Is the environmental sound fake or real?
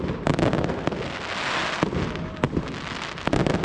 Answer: real